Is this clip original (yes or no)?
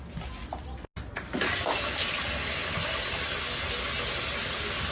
yes